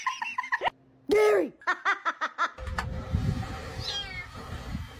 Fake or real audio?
real